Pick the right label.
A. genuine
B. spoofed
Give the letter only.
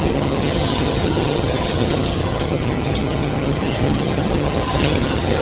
B